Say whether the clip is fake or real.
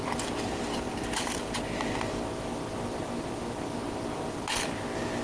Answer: real